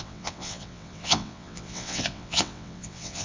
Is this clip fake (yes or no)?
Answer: yes